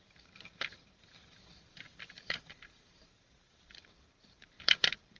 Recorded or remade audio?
remade